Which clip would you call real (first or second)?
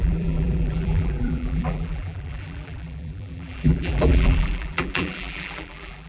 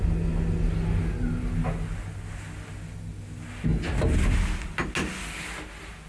second